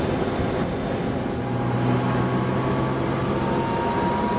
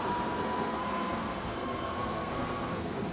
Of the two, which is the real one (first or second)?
first